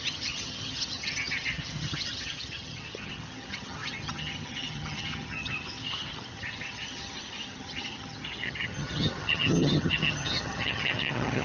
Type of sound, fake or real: fake